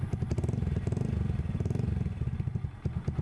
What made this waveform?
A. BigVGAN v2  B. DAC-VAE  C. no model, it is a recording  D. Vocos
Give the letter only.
C